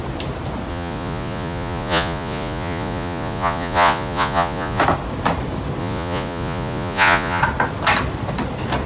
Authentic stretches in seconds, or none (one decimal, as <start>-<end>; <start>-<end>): 0.0-0.7; 4.8-5.8; 7.4-8.9